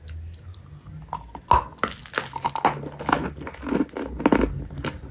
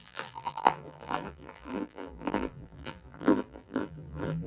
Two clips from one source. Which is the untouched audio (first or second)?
first